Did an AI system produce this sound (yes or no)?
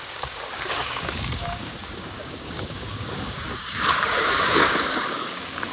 yes